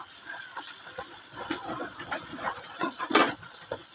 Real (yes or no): no